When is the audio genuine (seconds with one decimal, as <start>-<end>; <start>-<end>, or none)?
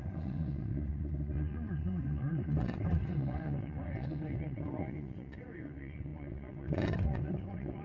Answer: none